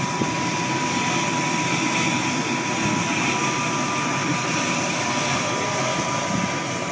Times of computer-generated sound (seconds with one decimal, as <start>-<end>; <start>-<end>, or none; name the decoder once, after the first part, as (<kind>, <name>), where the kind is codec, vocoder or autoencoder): 4.2-5.1 (vocoder, BigVGAN v2)